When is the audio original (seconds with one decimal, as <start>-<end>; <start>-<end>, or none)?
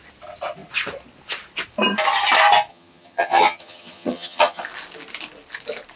0.0-2.7; 4.6-6.0